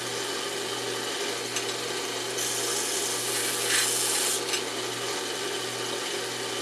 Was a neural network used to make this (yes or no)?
no